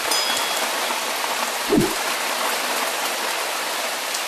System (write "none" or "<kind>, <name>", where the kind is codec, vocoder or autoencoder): none